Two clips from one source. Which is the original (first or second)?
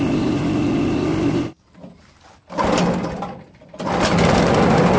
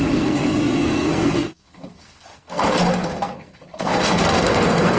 first